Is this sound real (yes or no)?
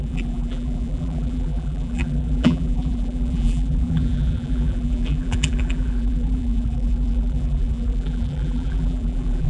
no